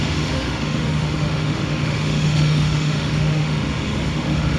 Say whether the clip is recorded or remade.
remade